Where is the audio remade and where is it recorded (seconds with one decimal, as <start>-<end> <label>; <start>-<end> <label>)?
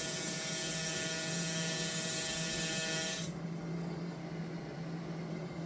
0.0-4.2 remade; 4.2-5.3 recorded; 5.3-5.7 remade